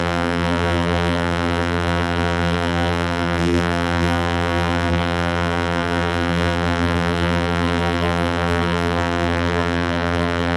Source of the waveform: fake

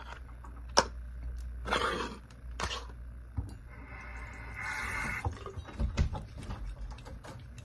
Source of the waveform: real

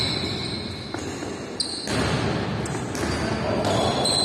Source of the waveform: real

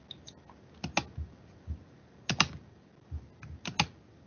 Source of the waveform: real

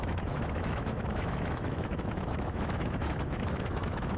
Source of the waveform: fake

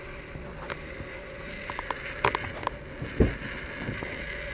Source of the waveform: real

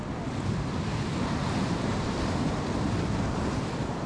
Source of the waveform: real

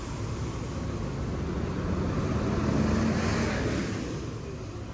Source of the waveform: real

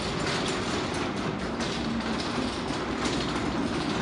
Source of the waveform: real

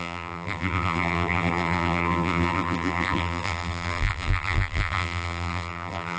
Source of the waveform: fake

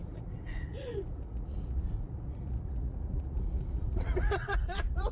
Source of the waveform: fake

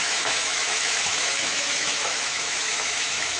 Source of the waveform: fake